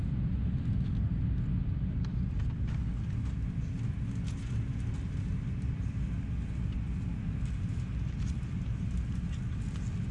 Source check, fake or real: real